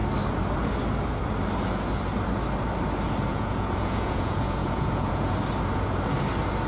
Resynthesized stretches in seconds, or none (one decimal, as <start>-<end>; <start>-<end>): 3.3-5.3